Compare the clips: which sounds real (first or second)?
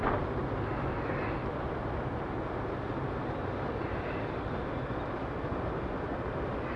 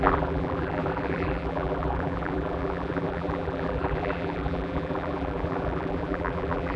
first